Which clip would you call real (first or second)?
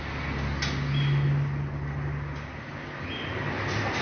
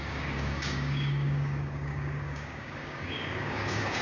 first